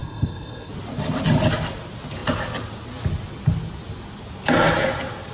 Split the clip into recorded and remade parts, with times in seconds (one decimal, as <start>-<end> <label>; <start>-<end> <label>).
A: 0.0-0.7 remade; 0.7-5.3 recorded